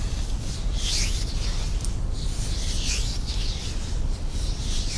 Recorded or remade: recorded